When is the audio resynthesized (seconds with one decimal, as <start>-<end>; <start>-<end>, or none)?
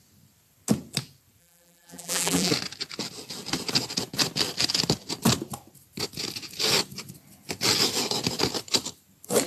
1.4-2.5